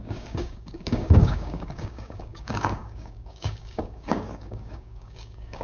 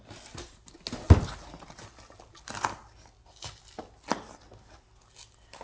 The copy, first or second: first